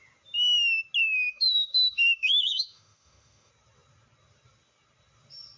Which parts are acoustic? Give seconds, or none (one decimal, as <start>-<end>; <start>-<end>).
0.0-1.0; 3.5-5.6